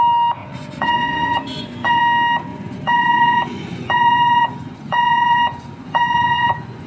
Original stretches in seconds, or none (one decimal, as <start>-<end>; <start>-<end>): 0.0-0.4; 2.0-2.5

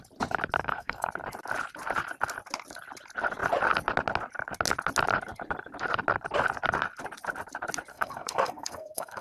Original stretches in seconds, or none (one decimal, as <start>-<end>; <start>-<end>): 0.0-0.6; 1.1-7.9

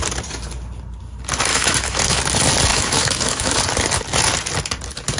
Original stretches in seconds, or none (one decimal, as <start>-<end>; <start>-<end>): 0.0-1.5; 2.2-2.7; 3.6-5.2

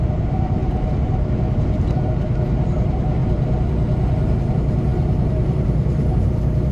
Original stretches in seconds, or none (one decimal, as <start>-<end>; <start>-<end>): none

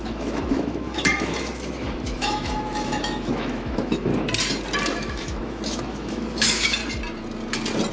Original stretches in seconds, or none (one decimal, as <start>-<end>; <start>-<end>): 4.1-4.9; 6.8-7.9

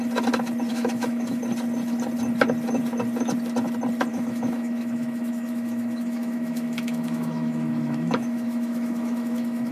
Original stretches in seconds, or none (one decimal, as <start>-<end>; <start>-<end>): 0.0-0.7; 1.4-4.1